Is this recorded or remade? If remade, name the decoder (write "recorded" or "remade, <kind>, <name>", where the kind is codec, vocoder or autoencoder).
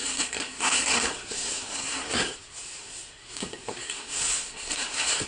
remade, codec, SNAC